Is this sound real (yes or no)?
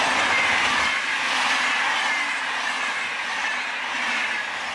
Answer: yes